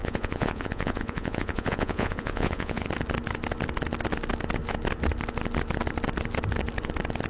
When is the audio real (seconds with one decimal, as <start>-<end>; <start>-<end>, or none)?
2.9-7.3